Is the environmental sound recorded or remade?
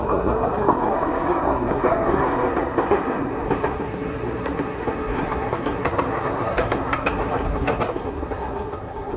remade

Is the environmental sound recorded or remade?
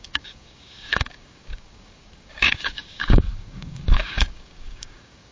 remade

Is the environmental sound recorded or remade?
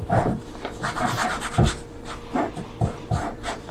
recorded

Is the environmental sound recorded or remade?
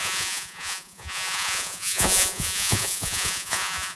remade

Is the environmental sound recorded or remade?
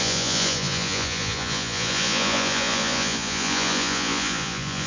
remade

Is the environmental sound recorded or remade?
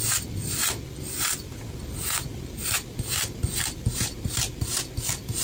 recorded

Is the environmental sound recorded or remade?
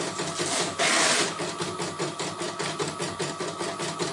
recorded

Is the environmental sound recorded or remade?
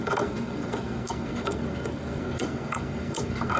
remade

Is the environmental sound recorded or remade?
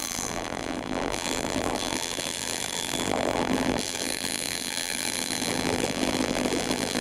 remade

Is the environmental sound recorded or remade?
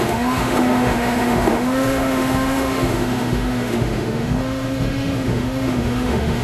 remade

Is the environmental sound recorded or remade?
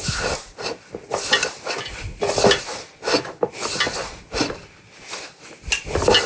recorded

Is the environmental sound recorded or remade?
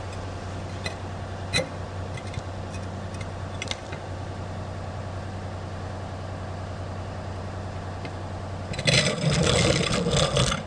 recorded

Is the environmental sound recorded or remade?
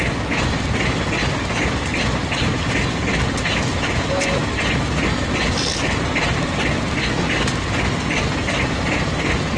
recorded